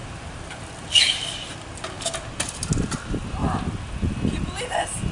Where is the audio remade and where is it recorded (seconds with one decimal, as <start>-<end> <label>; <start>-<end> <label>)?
0.0-5.1 recorded